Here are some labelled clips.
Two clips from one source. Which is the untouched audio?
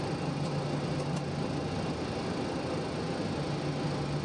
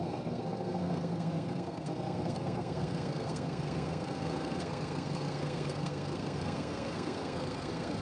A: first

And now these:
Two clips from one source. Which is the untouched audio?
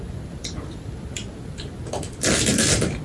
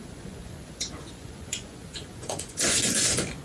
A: first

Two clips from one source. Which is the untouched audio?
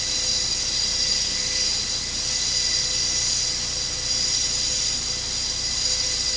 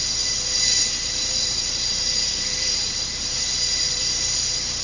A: first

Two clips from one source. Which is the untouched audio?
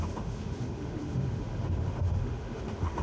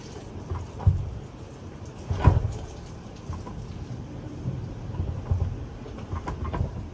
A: second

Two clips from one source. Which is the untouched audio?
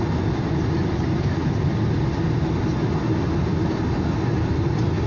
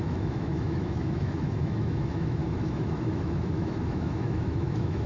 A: first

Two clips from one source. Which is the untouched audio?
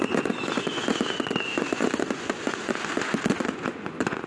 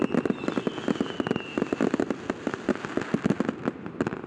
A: second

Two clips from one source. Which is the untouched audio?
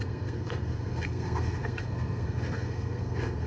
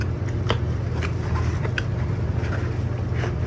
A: second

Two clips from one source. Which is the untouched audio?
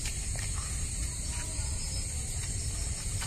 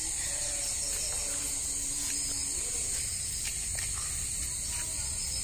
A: second